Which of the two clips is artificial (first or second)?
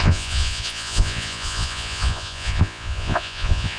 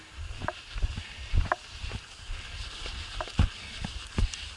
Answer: first